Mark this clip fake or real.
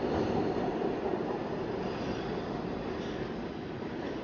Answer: real